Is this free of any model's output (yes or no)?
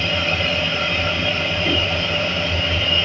yes